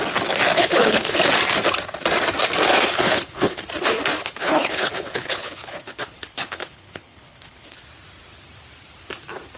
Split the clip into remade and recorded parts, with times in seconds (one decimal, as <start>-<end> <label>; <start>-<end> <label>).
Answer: 0.0-0.5 recorded; 0.5-1.2 remade; 1.2-2.7 recorded; 2.7-3.6 remade; 3.6-4.1 recorded; 4.1-7.8 remade; 7.8-9.6 recorded